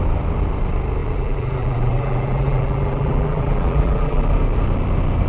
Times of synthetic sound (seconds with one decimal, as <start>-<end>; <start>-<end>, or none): 1.0-4.2